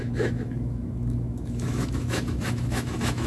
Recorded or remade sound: remade